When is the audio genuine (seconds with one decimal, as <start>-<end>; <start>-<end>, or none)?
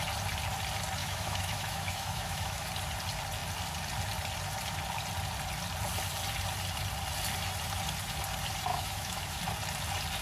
0.0-1.0; 2.7-8.7; 9.4-10.2